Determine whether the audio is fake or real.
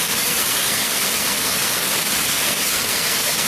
fake